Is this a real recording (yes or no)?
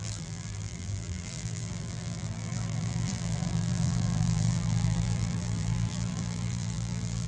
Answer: no